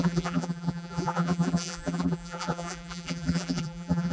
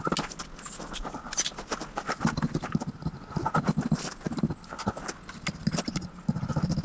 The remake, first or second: first